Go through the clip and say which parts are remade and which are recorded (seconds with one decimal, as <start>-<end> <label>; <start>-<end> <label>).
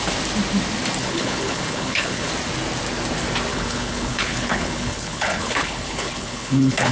0.0-1.0 recorded; 1.0-2.3 remade; 2.3-3.5 recorded; 3.5-6.9 remade